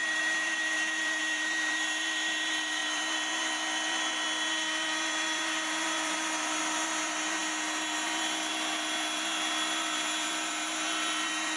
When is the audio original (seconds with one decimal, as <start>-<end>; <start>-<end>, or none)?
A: none